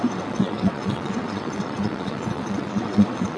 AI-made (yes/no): yes